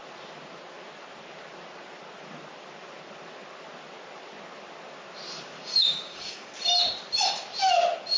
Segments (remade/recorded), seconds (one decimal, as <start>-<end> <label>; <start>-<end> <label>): 0.0-5.7 recorded; 5.7-6.5 remade; 6.5-8.2 recorded